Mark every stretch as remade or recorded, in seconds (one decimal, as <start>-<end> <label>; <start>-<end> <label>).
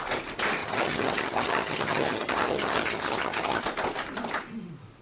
0.0-0.6 recorded; 0.6-3.6 remade; 3.6-5.0 recorded